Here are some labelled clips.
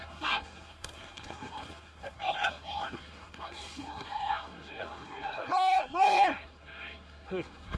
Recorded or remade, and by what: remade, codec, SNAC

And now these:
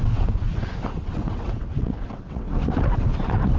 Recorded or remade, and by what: remade, vocoder, WaveNeXt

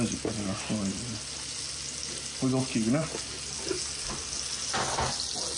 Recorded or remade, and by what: recorded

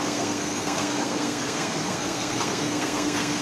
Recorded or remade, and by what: remade, codec, SNAC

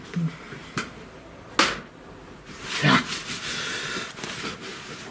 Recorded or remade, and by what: recorded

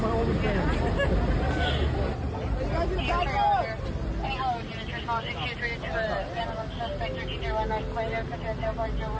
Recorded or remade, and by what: recorded